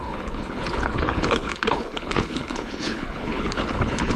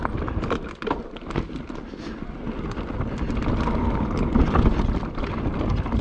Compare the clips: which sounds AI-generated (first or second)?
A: first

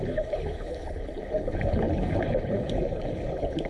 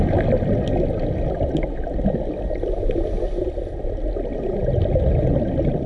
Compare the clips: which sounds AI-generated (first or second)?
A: first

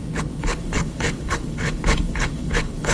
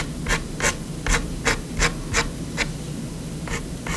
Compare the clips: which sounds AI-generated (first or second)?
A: first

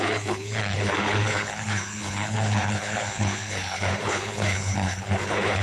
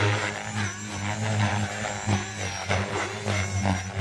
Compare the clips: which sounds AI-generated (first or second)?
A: first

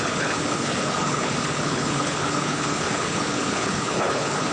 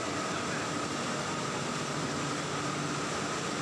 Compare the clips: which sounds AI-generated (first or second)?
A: first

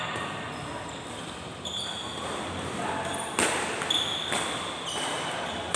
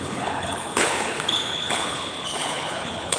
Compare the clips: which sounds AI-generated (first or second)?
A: second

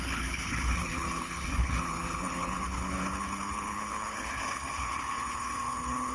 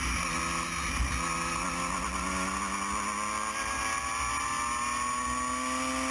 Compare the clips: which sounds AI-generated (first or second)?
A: first